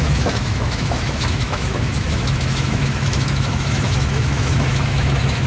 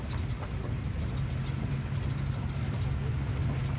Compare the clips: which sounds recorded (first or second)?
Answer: second